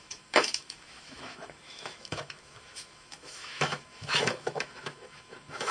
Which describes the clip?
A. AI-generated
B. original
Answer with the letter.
A